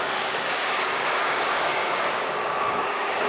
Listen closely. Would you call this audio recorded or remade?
remade